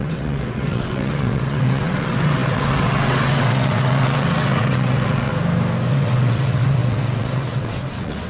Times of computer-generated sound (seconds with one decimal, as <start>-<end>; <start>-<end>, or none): 0.0-5.3; 5.9-8.3